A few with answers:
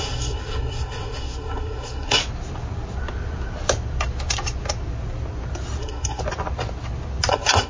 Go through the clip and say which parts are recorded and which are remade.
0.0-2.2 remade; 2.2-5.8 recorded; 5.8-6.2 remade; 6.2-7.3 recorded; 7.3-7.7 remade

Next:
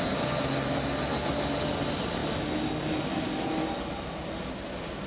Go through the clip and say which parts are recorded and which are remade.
0.0-5.1 recorded

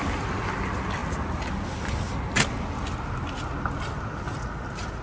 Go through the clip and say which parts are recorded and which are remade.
0.0-5.0 recorded